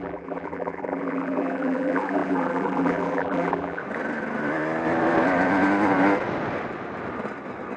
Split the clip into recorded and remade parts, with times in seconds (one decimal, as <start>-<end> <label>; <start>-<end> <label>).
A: 0.0-3.8 remade; 3.8-7.8 recorded